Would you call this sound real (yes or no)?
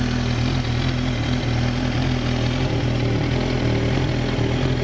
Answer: yes